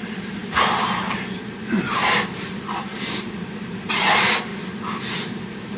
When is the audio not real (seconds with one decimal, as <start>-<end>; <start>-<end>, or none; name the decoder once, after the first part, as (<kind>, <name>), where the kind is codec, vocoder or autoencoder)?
0.0-4.5 (vocoder, BigVGAN v2); 5.0-5.8